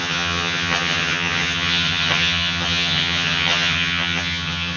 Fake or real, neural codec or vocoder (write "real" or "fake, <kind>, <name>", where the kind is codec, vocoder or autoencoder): fake, vocoder, HiFi-GAN